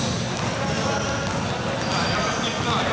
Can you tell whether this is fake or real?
real